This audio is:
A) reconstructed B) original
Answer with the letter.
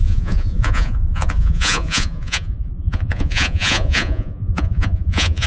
A